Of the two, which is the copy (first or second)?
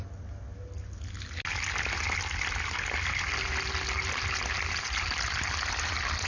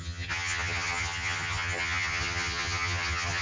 second